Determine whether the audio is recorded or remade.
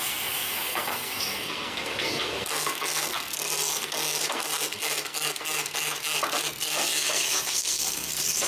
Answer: remade